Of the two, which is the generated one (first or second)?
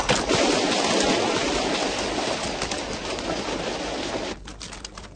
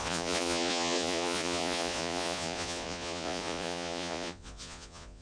second